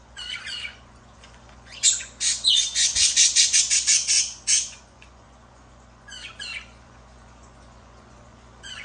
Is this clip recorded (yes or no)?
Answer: no